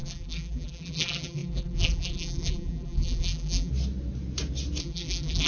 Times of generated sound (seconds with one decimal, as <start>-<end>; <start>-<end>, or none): 0.0-3.7; 4.8-5.5